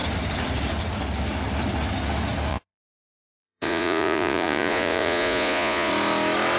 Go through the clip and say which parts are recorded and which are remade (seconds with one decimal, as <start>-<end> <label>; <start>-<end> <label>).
0.0-2.5 recorded; 2.5-5.9 remade; 5.9-6.6 recorded